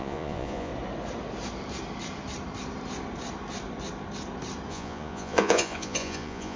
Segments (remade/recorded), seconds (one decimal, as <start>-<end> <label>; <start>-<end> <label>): 0.0-0.7 remade; 0.7-4.7 recorded; 4.7-6.6 remade